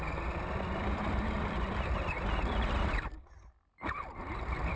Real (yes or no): no